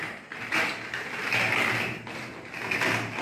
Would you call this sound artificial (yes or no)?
no